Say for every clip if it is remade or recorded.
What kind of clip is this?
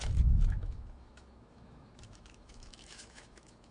remade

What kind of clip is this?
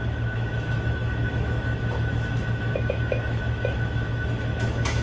remade